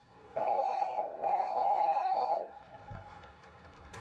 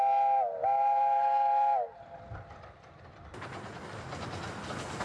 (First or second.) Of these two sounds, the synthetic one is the first